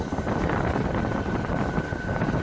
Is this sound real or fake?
real